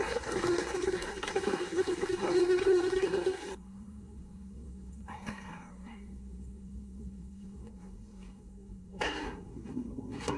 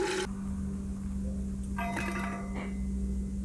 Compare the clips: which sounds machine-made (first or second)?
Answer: first